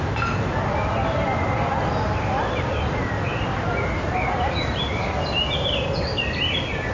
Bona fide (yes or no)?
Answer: yes